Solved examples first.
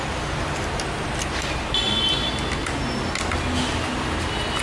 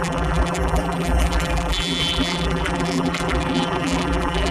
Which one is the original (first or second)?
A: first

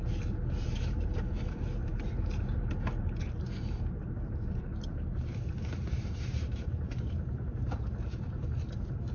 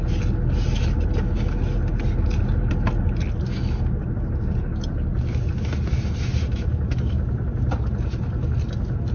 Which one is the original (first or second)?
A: second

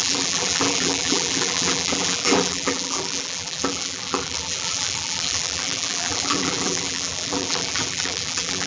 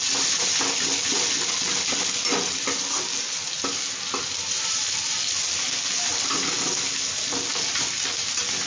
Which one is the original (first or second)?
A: second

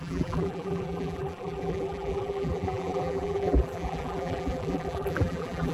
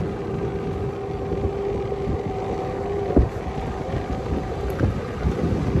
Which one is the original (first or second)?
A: second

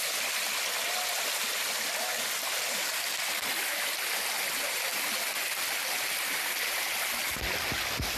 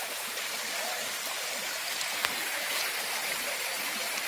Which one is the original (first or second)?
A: first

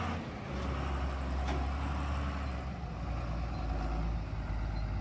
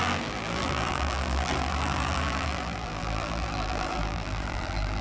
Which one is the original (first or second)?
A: first